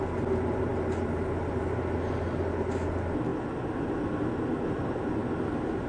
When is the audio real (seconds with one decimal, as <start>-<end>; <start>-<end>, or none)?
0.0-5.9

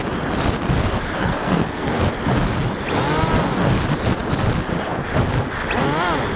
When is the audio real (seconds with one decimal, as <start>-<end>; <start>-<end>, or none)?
0.0-1.2; 2.0-6.4

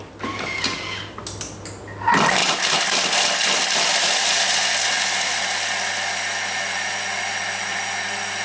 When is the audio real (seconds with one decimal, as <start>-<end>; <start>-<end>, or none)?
0.0-8.4